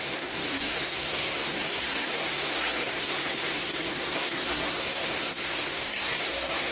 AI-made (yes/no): yes